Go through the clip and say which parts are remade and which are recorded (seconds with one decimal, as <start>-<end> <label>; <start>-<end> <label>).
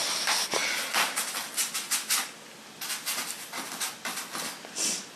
0.0-5.2 recorded